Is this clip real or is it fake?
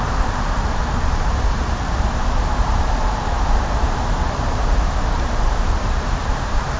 fake